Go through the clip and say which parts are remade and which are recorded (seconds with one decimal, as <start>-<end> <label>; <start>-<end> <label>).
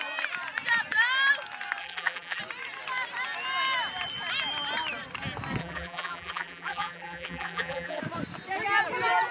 0.0-1.8 recorded; 1.8-2.4 remade; 2.4-5.6 recorded; 5.6-8.0 remade; 8.0-9.3 recorded